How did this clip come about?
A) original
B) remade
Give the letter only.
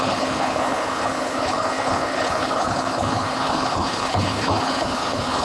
B